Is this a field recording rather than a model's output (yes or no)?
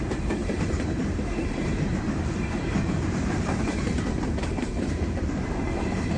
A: no